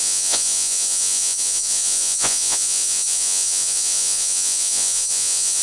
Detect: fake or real fake